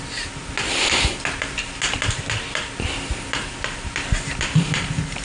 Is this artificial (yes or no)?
no